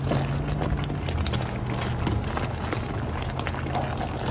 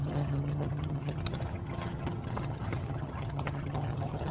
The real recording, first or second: first